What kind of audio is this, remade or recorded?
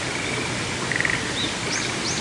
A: recorded